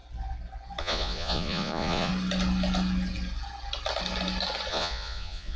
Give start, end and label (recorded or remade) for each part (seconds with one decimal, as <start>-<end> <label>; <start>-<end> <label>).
0.0-0.8 recorded; 0.8-2.1 remade; 2.1-4.7 recorded; 4.7-5.6 remade